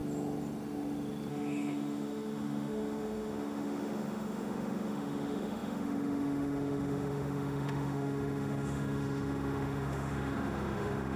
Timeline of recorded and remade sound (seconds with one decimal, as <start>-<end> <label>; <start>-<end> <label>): 0.0-1.3 recorded; 1.3-11.2 remade